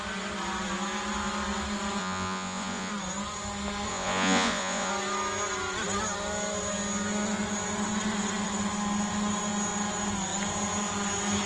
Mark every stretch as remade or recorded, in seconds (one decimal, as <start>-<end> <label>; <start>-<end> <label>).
0.0-2.0 recorded; 2.0-2.9 remade; 2.9-3.9 recorded; 3.9-4.9 remade; 4.9-11.5 recorded